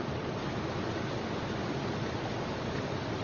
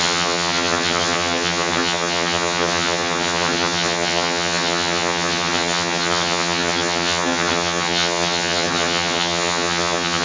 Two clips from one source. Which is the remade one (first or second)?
second